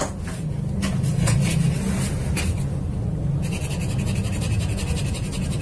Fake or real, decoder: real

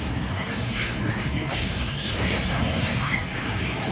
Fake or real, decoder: fake, codec, SNAC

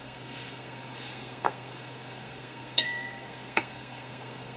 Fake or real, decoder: fake, codec, SNAC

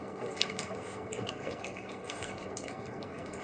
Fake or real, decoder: fake, codec, SNAC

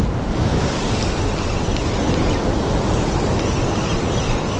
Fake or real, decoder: real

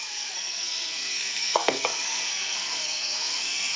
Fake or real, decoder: fake, codec, SNAC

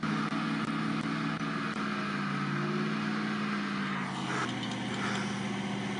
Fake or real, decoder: real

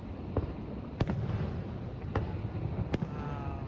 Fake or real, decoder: real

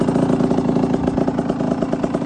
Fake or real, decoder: real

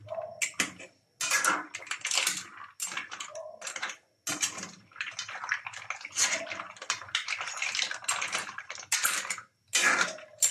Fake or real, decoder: real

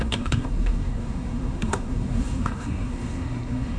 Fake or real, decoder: fake, codec, SNAC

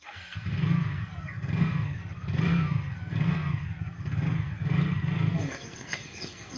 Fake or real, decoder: fake, codec, SNAC